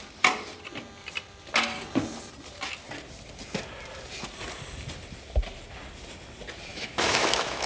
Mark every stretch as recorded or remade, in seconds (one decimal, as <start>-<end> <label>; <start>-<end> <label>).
0.0-6.7 recorded; 6.7-7.7 remade